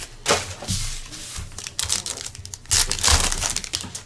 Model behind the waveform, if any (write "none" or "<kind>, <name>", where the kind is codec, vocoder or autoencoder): none